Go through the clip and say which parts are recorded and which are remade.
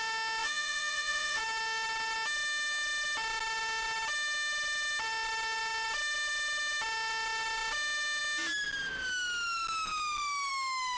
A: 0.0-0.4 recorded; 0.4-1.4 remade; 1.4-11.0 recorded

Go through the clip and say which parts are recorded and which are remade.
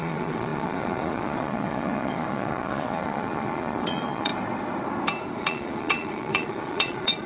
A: 0.0-4.3 remade; 4.3-5.4 recorded; 5.4-7.3 remade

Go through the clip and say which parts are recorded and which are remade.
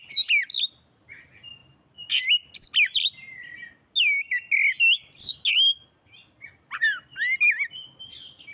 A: 0.0-8.5 recorded